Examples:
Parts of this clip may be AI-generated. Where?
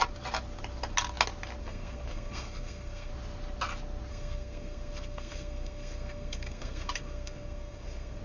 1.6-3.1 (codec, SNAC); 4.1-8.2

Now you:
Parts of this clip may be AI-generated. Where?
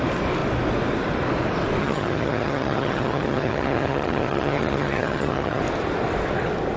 1.8-5.6 (vocoder, HiFi-GAN)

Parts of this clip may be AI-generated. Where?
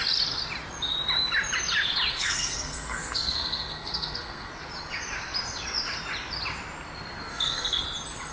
2.1-4.5 (codec, SNAC); 7.3-7.8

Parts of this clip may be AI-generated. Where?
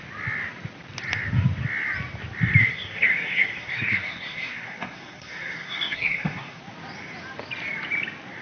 2.6-6.6 (codec, SNAC)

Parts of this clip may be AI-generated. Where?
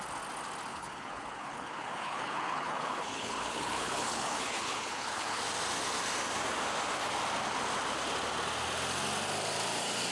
0.7-5.4 (codec, HILCodec)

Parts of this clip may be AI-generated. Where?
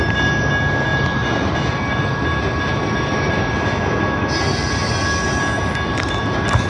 none